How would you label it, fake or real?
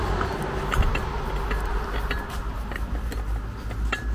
real